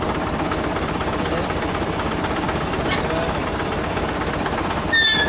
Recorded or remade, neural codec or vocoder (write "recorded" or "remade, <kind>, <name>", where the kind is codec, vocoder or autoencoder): recorded